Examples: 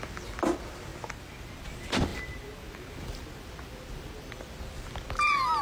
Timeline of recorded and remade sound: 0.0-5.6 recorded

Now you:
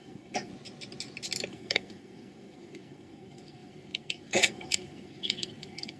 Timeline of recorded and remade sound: 0.0-0.5 remade; 0.5-1.5 recorded; 1.5-6.0 remade